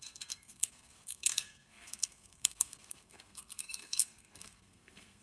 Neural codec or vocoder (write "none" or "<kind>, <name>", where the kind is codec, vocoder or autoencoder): codec, SNAC